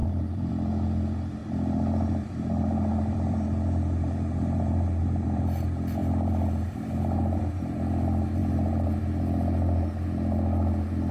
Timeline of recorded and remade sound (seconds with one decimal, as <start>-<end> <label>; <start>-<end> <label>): 0.0-0.5 remade; 0.5-1.4 recorded; 1.4-5.4 remade; 5.4-6.0 recorded; 6.0-7.4 remade; 7.4-8.4 recorded; 8.4-9.0 remade; 9.0-11.1 recorded